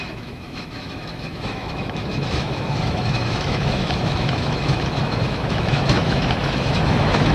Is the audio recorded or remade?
remade